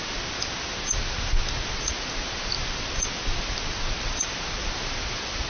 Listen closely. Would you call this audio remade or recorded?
recorded